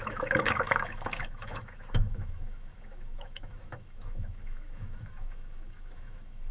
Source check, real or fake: fake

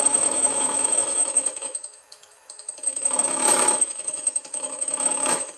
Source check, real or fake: fake